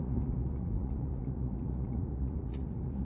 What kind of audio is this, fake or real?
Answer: fake